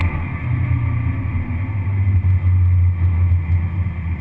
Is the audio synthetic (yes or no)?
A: no